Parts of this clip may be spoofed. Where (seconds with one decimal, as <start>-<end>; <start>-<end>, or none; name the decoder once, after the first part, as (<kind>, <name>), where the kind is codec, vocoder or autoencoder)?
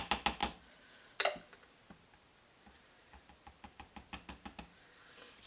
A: none